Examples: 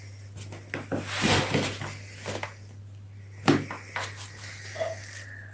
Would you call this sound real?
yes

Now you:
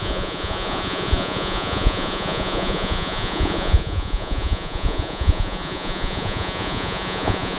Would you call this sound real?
no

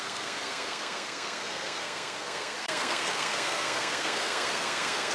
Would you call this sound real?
no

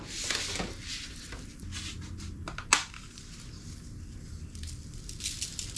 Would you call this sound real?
yes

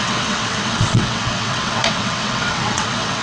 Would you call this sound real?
no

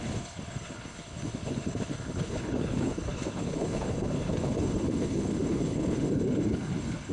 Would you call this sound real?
no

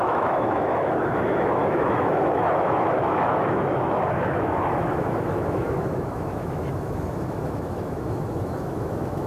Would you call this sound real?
no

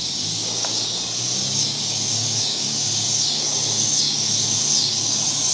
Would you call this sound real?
no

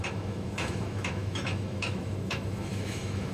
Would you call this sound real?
no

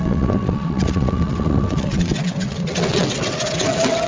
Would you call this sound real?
no